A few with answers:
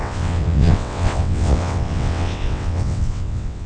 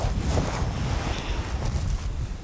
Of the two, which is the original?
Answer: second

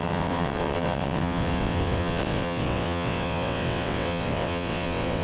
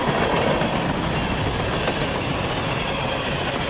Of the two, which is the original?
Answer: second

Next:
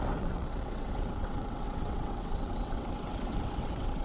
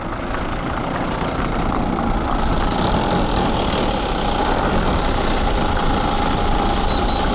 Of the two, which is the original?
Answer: second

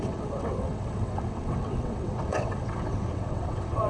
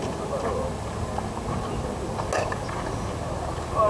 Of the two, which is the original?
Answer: second